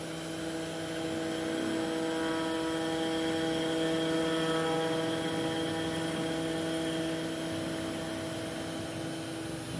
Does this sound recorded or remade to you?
recorded